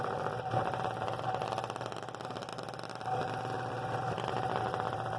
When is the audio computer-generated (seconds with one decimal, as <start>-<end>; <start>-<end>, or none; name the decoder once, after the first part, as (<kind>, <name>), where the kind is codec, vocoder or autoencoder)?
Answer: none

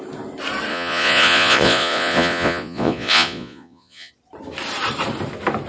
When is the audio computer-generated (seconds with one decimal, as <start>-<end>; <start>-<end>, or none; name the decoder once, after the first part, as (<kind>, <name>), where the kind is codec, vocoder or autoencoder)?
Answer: 0.7-4.1 (vocoder, Vocos)

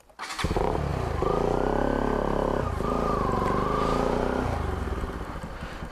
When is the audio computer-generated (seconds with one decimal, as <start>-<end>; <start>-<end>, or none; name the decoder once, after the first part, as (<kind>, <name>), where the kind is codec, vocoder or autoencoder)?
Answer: none

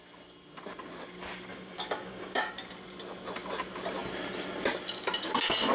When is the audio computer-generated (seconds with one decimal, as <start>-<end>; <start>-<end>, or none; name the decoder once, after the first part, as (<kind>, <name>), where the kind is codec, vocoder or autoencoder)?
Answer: 1.5-2.5 (codec, DAC)